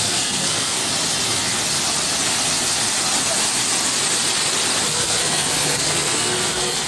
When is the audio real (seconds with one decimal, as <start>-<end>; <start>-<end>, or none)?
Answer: 0.8-4.9